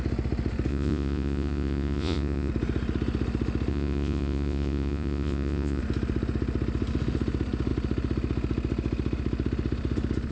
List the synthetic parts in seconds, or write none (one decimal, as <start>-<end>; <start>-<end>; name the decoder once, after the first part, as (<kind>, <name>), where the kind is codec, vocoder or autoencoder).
0.7-2.5 (vocoder, Vocos); 3.7-5.8